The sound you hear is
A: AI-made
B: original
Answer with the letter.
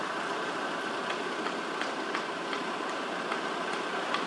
B